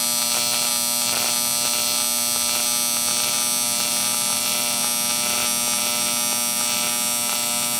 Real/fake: real